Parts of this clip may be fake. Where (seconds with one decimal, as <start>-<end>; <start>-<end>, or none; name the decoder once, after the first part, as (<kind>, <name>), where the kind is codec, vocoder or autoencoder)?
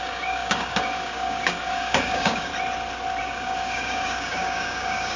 0.0-2.5 (codec, DAC); 3.2-5.2